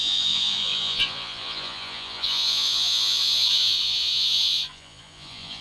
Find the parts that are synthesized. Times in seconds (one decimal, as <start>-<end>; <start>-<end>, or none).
0.0-5.6